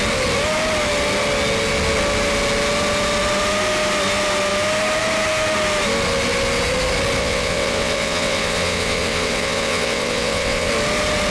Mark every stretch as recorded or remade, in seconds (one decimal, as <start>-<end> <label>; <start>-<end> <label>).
0.0-7.2 recorded; 7.2-10.7 remade; 10.7-11.3 recorded